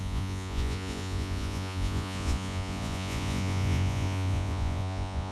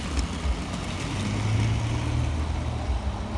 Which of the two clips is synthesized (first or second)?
first